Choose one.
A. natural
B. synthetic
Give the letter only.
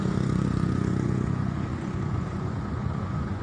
B